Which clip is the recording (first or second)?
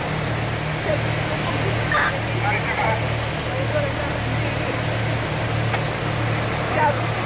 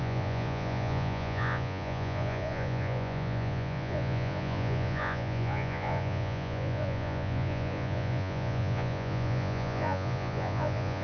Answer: first